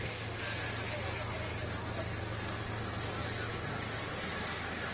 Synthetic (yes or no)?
no